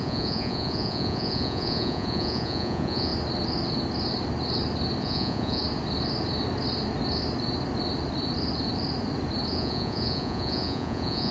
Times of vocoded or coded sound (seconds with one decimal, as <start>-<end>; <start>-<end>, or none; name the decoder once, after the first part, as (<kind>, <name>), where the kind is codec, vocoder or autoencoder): 0.0-3.1 (vocoder, Vocos); 5.0-5.6; 9.5-11.3